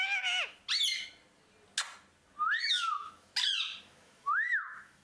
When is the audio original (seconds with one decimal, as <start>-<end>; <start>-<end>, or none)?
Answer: 0.6-2.6; 3.3-3.8